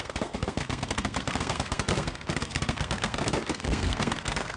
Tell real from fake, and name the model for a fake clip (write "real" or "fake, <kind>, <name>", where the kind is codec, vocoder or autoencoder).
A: fake, codec, SNAC